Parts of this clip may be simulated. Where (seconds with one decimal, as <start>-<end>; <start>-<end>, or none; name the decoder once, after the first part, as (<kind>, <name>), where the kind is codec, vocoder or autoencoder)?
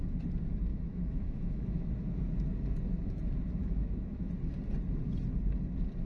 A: 0.7-1.9 (autoencoder, DAC-VAE); 3.6-4.3